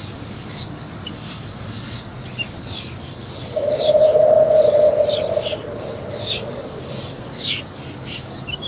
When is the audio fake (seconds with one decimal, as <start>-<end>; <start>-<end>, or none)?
0.0-2.1; 2.6-3.2; 6.2-8.7